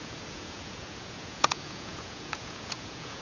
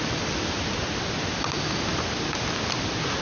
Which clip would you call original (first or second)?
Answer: second